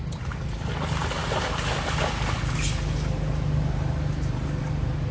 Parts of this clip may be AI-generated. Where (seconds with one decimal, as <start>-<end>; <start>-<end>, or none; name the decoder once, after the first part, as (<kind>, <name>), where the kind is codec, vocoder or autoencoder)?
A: none